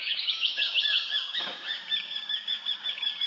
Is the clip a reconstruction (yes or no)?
yes